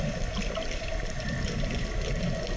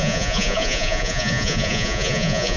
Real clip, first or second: first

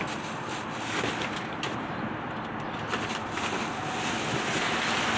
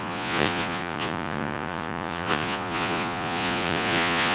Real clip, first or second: first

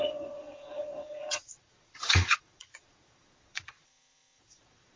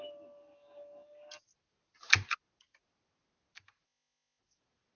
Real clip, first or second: second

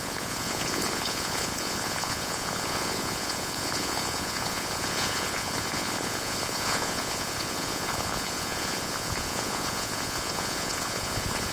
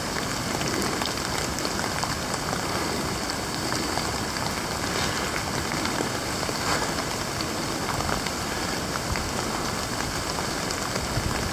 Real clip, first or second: second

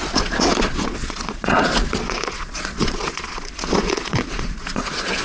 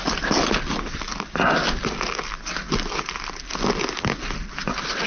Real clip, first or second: second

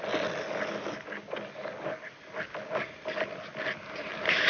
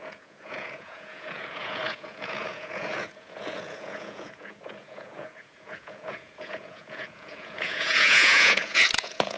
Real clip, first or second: first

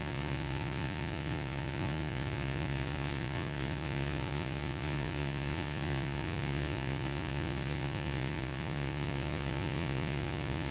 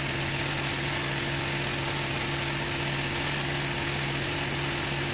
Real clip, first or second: second